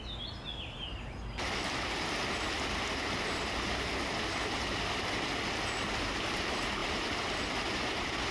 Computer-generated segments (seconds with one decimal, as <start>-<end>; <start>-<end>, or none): none